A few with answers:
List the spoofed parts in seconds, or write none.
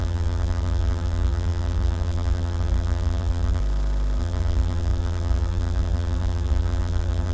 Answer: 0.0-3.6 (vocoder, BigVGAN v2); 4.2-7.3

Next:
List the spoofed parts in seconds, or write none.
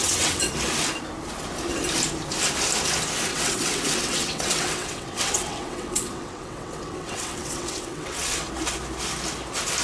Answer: 0.0-0.5 (vocoder, WaveNeXt); 3.3-8.5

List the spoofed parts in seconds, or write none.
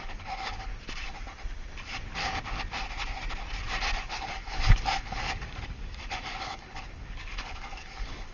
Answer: 0.0-0.7 (codec, DAC); 4.1-8.3